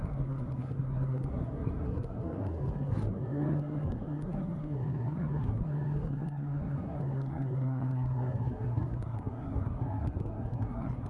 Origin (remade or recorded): remade